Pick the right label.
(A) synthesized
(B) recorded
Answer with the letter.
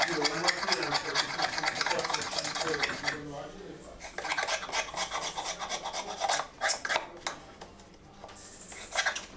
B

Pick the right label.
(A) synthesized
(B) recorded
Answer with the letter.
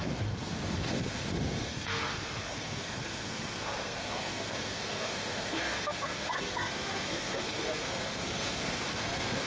A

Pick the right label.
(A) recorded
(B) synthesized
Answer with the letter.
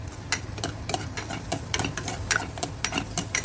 A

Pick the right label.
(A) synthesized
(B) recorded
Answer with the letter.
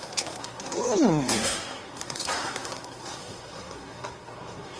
A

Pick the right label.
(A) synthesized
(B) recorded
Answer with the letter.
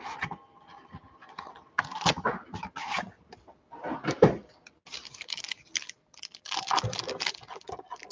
B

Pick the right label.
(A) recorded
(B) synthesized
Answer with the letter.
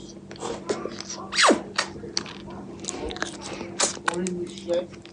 A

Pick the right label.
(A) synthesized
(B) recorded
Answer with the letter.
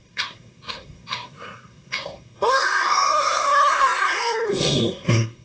A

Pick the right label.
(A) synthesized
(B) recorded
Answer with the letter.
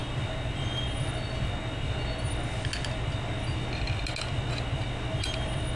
B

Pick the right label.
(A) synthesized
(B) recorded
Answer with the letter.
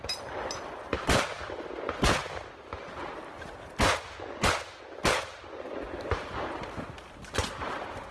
B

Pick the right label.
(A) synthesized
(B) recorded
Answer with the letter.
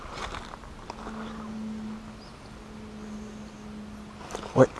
B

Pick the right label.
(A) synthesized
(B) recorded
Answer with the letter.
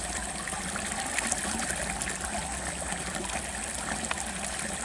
B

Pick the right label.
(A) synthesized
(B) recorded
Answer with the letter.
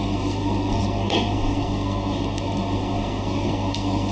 A